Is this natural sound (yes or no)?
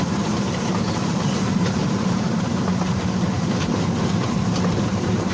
no